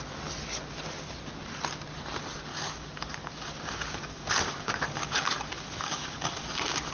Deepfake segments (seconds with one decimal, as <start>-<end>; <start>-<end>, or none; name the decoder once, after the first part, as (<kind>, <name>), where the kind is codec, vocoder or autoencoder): 2.5-6.9 (codec, DAC)